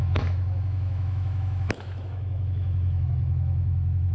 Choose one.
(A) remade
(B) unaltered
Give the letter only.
A